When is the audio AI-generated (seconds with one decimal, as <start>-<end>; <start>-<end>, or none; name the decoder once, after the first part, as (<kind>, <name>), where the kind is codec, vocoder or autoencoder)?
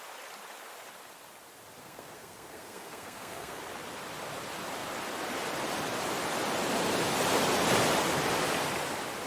1.8-3.6 (codec, SNAC)